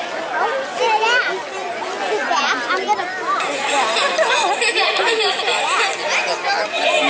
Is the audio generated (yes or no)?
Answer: no